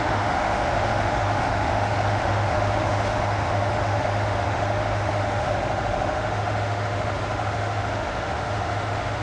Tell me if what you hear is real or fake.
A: fake